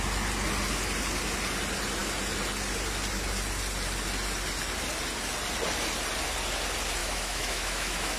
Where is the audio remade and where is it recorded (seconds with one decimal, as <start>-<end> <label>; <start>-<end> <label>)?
0.0-7.0 recorded; 7.0-8.2 remade